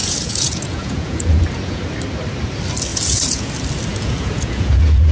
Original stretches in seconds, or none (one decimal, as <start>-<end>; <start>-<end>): 1.8-2.9; 3.5-3.9